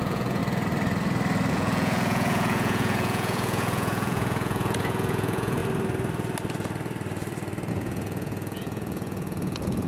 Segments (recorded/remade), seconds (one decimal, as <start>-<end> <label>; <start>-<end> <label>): 0.0-0.4 remade; 0.4-1.5 recorded; 1.5-5.6 remade; 5.6-7.7 recorded; 7.7-9.9 remade